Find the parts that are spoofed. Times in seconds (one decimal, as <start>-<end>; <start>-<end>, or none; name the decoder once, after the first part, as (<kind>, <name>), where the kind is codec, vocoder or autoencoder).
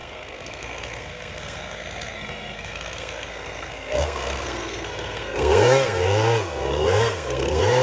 0.0-7.8 (codec, SNAC)